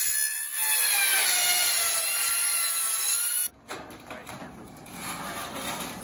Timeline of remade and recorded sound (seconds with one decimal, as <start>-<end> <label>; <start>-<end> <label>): 0.0-4.2 recorded; 4.2-5.2 remade; 5.2-6.0 recorded